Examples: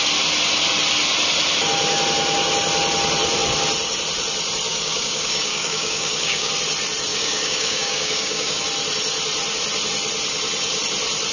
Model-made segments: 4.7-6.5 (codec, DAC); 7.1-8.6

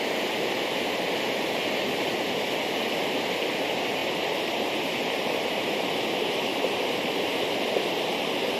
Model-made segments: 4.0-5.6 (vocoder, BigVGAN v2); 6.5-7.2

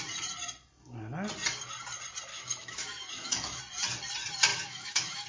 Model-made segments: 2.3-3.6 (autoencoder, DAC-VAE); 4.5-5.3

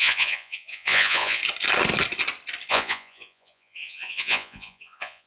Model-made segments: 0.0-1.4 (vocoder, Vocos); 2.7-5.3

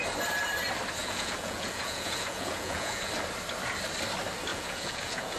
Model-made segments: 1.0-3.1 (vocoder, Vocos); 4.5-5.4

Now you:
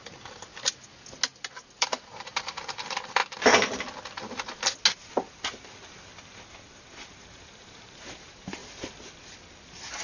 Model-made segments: 0.0-0.5 (vocoder, BigVGAN v2); 1.8-3.2; 7.3-8.6; 9.6-10.0